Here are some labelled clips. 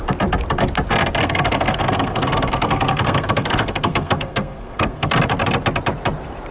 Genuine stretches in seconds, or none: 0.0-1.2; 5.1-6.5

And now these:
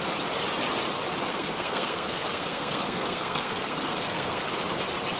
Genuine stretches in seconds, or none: 0.0-1.3; 4.4-5.2

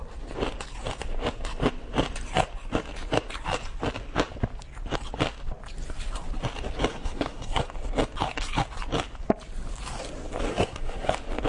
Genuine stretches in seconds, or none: 0.0-6.9; 7.6-10.5; 11.1-11.5